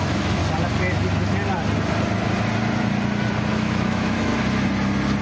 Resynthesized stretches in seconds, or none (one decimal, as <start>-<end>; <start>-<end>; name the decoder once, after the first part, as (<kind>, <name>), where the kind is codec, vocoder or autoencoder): 0.0-0.4 (autoencoder, DAC-VAE); 3.5-4.3